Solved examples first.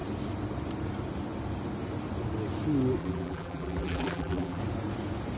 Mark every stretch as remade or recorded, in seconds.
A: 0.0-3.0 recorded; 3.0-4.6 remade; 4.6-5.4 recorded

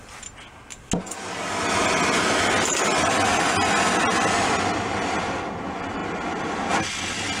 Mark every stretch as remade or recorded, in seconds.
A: 0.0-6.0 recorded; 6.0-7.0 remade; 7.0-7.4 recorded

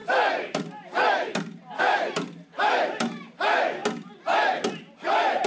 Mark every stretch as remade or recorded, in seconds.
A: 0.0-3.8 remade; 3.8-4.8 recorded; 4.8-5.5 remade